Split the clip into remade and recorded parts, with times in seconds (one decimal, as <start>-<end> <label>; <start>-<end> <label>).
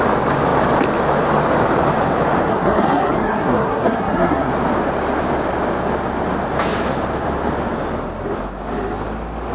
0.0-2.5 recorded; 2.5-4.5 remade; 4.5-9.5 recorded